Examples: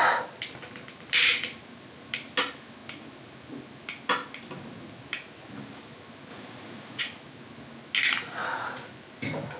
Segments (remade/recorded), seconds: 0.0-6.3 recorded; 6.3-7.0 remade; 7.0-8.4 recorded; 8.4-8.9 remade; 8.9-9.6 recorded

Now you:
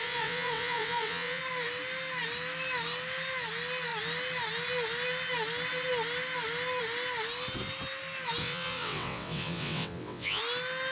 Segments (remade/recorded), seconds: 0.0-1.4 remade; 1.4-8.4 recorded; 8.4-10.4 remade; 10.4-10.9 recorded

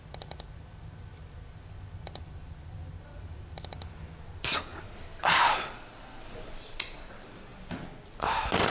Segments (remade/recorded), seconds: 0.0-8.7 recorded